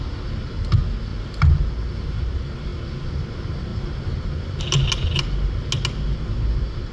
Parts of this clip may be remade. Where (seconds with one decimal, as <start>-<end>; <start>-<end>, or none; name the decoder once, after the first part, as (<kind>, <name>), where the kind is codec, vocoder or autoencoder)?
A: none